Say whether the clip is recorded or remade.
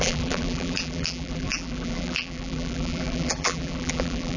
remade